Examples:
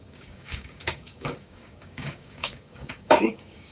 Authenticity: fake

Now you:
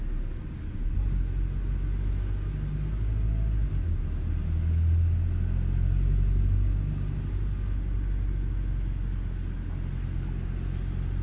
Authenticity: real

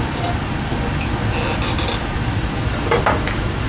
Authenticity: real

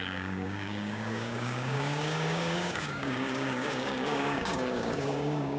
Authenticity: fake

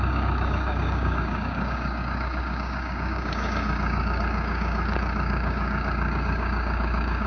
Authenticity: fake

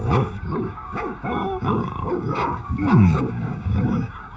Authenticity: fake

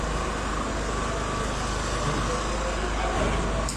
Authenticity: real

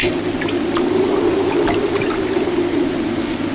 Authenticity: real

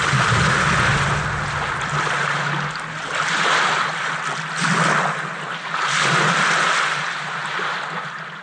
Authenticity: real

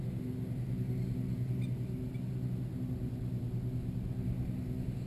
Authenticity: real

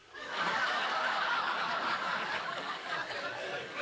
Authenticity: fake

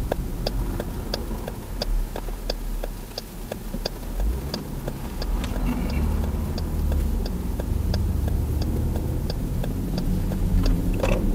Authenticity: real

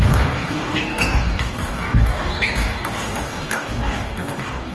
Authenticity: fake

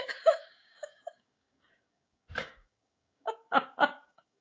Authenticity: fake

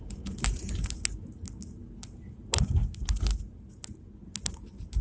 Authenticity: real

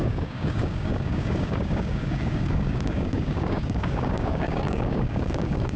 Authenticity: fake